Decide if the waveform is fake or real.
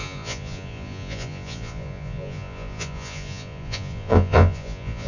fake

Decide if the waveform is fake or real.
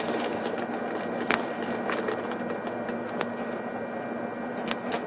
real